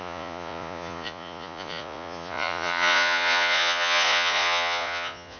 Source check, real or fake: fake